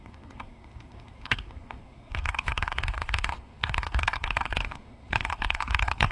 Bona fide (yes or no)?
no